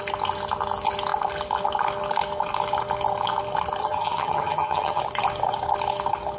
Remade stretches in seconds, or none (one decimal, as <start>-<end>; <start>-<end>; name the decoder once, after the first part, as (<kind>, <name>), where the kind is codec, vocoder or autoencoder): 3.8-5.0 (vocoder, HiFi-GAN)